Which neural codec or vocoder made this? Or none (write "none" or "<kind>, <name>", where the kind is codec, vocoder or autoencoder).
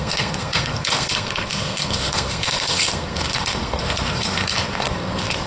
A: codec, SNAC